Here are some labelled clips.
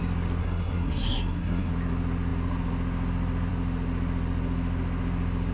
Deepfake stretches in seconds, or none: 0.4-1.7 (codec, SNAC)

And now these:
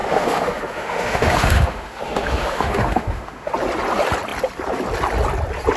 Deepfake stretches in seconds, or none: 0.0-3.5 (autoencoder, DAC-VAE)

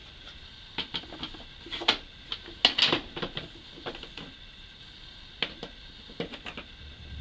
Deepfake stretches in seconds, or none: none